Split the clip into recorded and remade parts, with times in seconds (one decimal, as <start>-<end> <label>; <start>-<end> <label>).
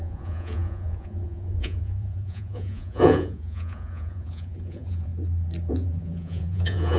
0.0-5.1 remade; 5.1-5.7 recorded; 5.7-7.0 remade